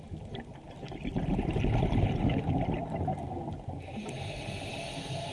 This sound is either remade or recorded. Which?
recorded